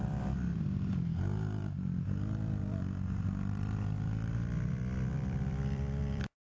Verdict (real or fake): fake